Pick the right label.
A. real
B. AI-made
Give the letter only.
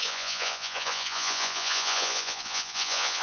B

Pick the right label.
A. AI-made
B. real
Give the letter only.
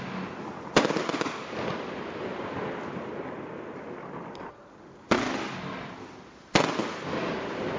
B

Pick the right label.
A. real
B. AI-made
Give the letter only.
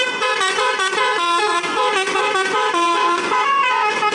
B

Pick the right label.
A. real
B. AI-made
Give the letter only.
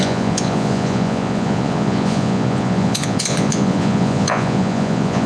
B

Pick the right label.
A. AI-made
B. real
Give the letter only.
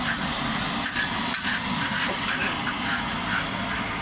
B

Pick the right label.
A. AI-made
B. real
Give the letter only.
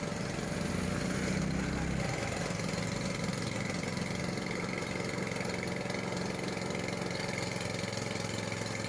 B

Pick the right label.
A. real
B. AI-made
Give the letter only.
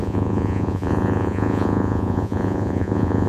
B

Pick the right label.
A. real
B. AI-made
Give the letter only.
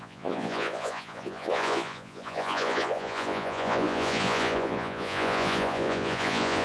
B